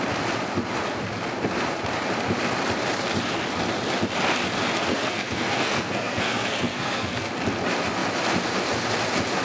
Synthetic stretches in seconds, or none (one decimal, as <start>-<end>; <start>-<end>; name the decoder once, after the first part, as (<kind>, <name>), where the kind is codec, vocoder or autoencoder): 4.9-7.3 (codec, SNAC)